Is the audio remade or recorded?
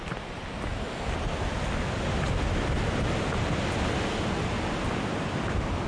recorded